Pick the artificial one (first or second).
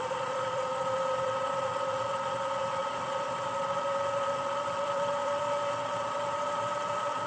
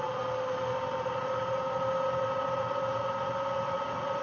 first